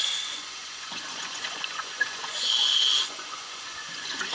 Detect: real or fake fake